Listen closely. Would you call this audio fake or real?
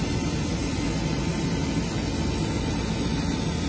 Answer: real